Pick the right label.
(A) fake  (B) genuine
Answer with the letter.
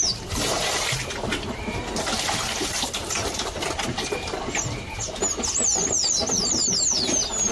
B